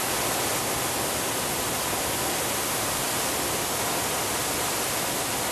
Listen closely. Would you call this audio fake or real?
real